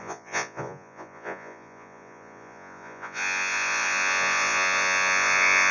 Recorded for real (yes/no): no